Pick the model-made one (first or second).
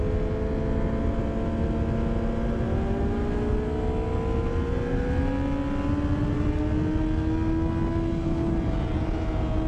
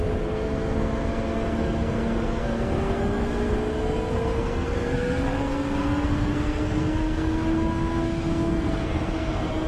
second